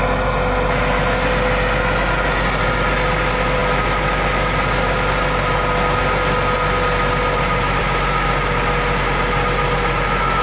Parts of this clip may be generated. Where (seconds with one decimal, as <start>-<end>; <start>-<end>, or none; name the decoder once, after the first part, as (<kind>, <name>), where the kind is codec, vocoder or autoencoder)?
none